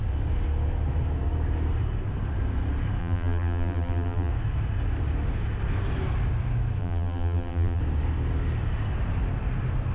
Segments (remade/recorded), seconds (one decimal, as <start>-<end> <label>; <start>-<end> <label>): 0.0-3.0 recorded; 3.0-4.3 remade; 4.3-6.8 recorded; 6.8-7.8 remade; 7.8-9.9 recorded